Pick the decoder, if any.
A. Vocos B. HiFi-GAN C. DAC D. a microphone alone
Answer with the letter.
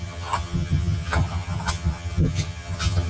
B